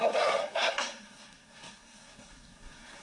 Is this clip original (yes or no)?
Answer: no